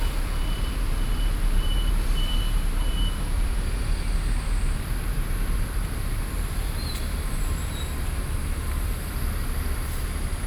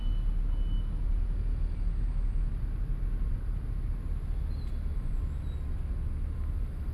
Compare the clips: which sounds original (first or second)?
second